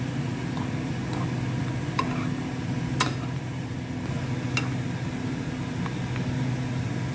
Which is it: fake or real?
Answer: real